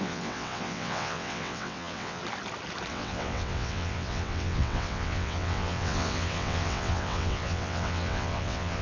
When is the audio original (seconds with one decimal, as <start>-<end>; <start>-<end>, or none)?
2.2-2.9